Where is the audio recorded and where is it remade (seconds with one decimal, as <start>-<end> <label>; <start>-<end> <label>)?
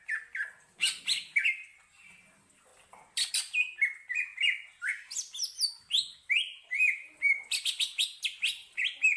0.0-9.2 recorded